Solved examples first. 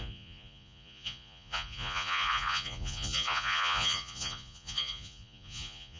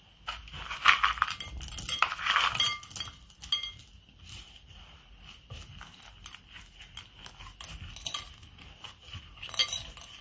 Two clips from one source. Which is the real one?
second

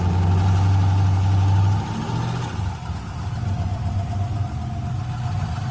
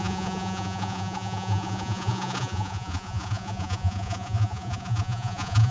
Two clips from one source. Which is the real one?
first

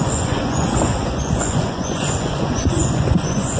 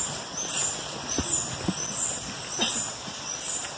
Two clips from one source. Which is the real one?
second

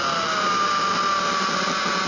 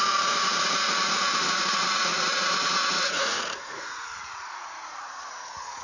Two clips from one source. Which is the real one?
first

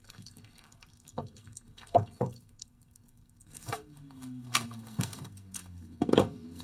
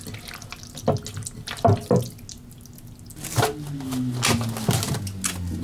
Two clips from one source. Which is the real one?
second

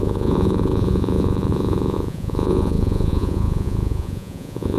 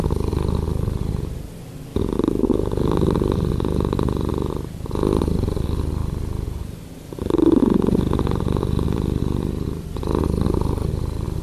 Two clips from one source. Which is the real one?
second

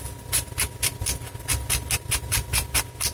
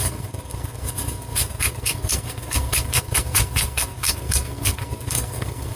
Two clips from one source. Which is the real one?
first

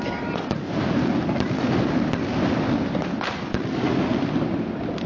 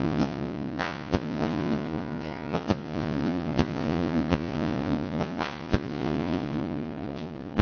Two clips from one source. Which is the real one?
first